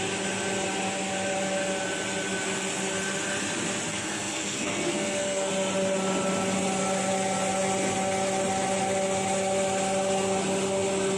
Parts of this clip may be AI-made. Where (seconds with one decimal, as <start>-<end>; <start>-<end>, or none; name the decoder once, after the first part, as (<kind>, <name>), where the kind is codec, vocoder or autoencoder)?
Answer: 3.9-5.5 (codec, SNAC)

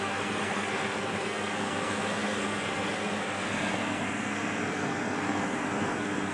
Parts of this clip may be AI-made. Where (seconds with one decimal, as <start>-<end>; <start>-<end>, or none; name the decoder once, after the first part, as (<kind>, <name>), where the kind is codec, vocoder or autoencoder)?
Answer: 0.0-6.3 (codec, SNAC)

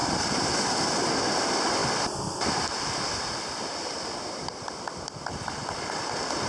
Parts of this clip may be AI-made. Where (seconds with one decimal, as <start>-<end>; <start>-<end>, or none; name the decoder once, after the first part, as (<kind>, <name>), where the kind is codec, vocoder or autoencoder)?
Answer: none